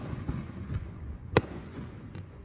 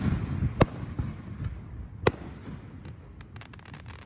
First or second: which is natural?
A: second